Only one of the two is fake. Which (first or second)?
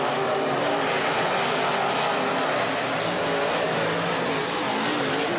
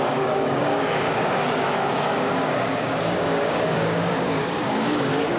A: second